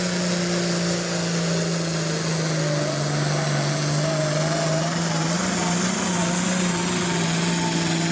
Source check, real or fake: real